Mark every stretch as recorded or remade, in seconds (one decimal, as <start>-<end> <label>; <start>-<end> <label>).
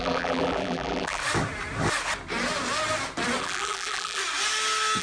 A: 0.0-1.2 remade; 1.2-3.4 recorded; 3.4-4.2 remade; 4.2-5.0 recorded